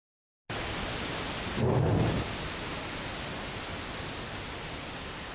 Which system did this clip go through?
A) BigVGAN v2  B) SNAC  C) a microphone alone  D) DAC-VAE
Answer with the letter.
C